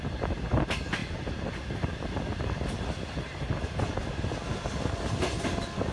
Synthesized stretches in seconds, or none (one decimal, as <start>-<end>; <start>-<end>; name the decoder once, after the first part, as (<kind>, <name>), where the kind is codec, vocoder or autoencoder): none